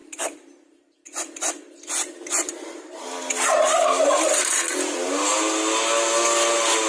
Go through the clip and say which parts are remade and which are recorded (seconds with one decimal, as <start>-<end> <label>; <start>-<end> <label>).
0.0-6.9 recorded